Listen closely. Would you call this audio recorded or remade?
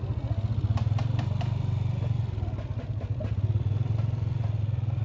recorded